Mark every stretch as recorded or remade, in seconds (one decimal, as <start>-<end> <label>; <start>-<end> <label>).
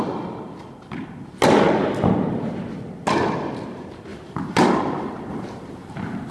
0.0-0.6 recorded; 0.6-1.3 remade; 1.3-4.1 recorded; 4.1-4.6 remade; 4.6-5.3 recorded; 5.3-6.3 remade